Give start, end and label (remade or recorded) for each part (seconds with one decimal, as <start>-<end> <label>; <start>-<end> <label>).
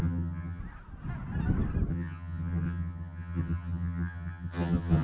0.0-0.6 remade; 0.6-1.9 recorded; 1.9-5.0 remade